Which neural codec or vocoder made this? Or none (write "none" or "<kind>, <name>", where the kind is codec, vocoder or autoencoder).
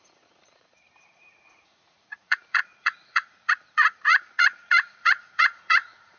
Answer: vocoder, Vocos